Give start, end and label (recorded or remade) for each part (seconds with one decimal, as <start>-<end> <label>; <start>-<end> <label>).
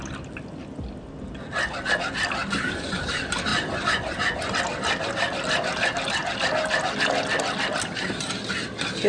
0.0-9.1 recorded